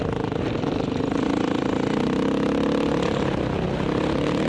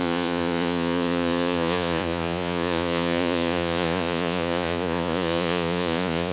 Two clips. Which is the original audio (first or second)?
first